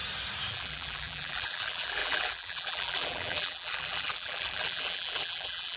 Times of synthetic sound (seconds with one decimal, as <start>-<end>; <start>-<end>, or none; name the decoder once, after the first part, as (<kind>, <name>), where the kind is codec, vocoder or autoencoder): 0.5-5.8 (vocoder, BigVGAN v2)